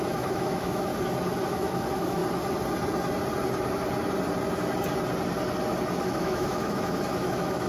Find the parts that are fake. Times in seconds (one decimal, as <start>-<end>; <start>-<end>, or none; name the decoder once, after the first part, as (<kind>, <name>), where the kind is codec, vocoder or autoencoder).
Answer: 0.0-0.9 (autoencoder, DAC-VAE); 1.5-2.2; 6.0-7.7